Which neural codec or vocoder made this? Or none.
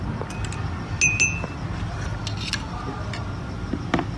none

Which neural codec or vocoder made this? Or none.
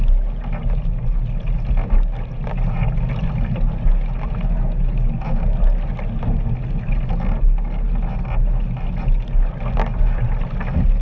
none